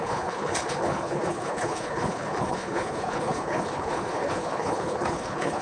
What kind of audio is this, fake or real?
fake